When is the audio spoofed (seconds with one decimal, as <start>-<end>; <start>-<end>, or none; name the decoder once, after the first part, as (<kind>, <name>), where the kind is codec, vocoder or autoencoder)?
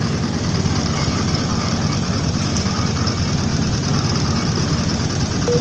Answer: none